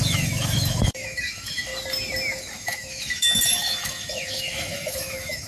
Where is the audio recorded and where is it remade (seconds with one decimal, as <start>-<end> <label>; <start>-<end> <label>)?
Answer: 0.0-1.7 remade; 1.7-2.4 recorded; 2.4-5.5 remade